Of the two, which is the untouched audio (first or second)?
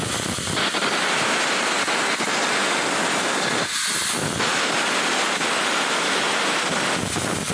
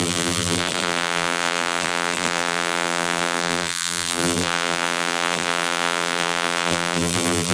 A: first